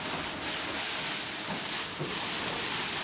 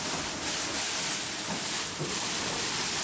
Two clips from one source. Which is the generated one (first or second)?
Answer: second